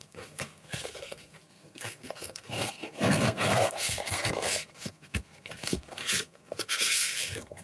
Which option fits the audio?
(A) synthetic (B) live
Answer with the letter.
A